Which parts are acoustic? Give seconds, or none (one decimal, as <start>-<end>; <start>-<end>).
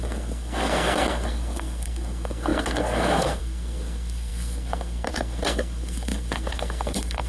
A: none